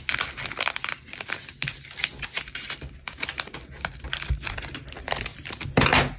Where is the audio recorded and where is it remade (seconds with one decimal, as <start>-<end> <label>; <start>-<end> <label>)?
0.0-6.2 recorded